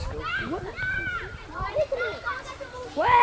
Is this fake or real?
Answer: real